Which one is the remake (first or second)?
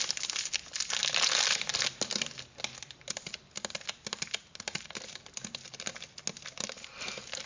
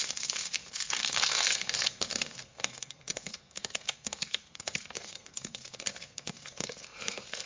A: second